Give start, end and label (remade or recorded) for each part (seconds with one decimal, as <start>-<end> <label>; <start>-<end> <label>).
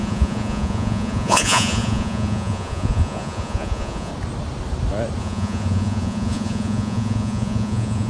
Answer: 0.0-4.1 remade; 4.1-5.2 recorded; 5.2-8.1 remade